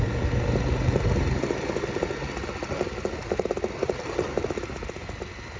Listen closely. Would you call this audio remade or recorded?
recorded